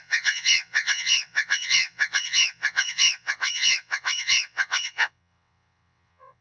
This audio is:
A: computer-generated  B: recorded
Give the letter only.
A